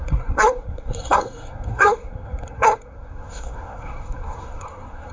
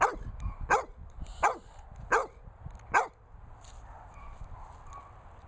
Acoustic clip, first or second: second